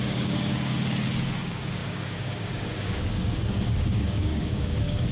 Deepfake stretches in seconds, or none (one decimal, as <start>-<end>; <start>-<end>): 0.0-0.7; 1.4-5.1